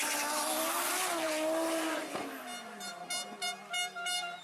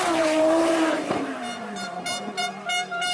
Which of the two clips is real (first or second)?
first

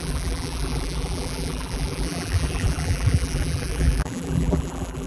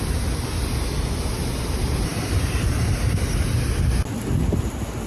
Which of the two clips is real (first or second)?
second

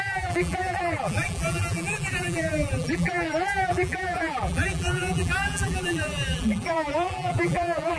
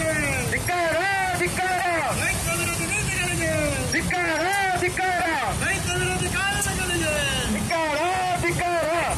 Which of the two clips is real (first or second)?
second